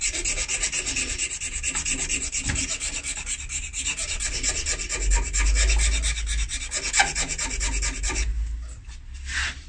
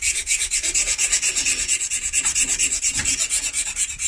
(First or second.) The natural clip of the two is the first